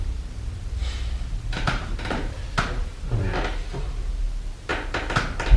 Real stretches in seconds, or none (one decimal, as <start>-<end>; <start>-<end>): 0.0-0.8; 4.2-5.6